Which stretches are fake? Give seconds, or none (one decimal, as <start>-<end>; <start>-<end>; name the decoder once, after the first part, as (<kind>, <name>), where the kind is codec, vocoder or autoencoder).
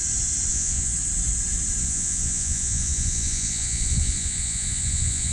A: 0.5-0.9 (vocoder, Vocos); 1.8-5.3